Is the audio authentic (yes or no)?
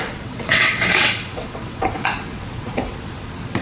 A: no